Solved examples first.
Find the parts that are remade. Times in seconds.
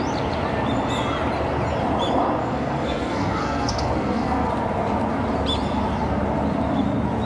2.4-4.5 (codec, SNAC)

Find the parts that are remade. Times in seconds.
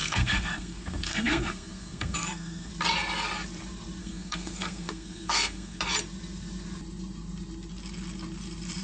0.0-2.7 (codec, SNAC); 4.0-5.8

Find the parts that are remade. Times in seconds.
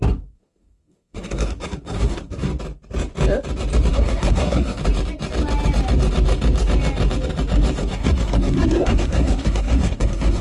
0.0-2.5 (codec, SNAC); 3.9-4.8; 7.8-10.4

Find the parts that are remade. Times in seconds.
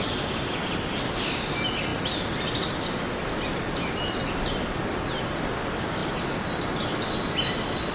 none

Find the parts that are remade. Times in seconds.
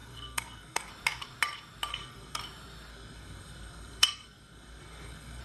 0.0-0.9 (codec, SNAC); 1.9-2.4; 2.9-5.4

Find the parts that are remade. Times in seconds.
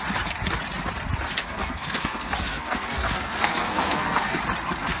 1.4-4.4 (codec, SNAC)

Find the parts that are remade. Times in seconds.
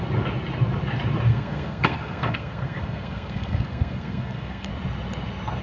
1.3-4.7 (codec, SNAC)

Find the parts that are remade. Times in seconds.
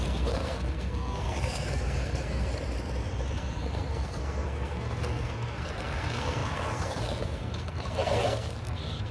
0.0-2.5 (codec, SNAC); 3.3-9.1